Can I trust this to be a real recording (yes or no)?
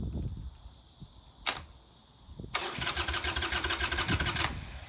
yes